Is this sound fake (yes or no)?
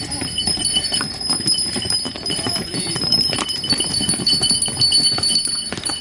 yes